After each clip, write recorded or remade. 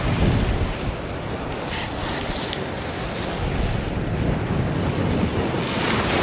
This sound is recorded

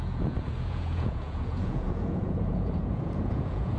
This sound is remade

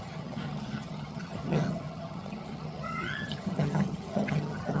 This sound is remade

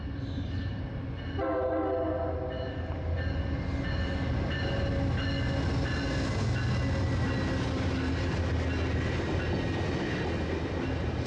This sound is recorded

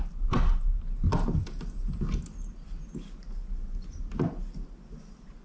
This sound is recorded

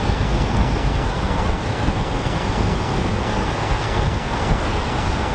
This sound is remade